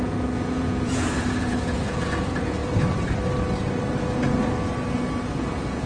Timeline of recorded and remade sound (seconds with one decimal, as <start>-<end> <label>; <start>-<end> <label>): 0.0-2.6 remade; 2.6-5.3 recorded; 5.3-5.9 remade